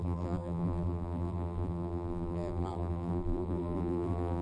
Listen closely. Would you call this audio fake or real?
fake